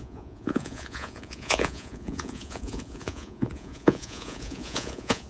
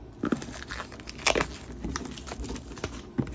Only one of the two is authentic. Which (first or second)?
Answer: second